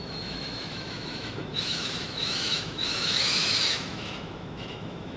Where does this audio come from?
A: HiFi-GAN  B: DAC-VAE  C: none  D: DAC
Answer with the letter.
B